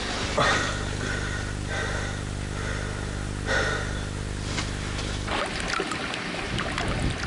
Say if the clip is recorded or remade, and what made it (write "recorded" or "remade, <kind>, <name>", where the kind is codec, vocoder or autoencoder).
recorded